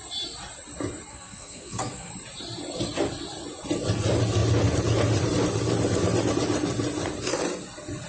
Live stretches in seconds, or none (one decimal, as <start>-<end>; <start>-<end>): 0.0-1.1; 2.1-8.1